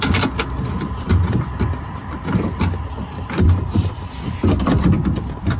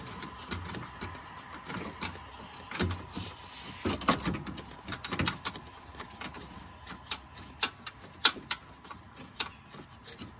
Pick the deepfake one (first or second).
first